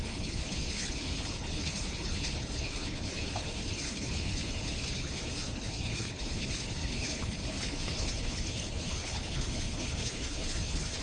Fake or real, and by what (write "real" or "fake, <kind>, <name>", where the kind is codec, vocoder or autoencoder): fake, codec, HILCodec